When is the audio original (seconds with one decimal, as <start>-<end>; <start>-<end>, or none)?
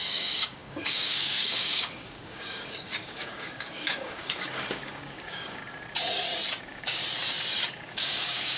5.6-6.6; 7.0-7.6